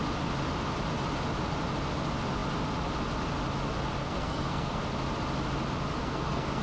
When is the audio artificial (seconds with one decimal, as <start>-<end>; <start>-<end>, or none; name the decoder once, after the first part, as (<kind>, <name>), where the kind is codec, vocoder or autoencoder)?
4.0-4.8 (codec, SNAC); 6.0-6.6